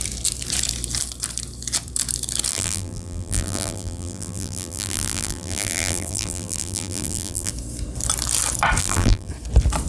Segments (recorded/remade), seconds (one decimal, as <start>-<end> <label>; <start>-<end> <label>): 0.0-2.5 recorded; 2.5-7.5 remade; 7.5-8.8 recorded; 8.8-9.3 remade; 9.3-9.9 recorded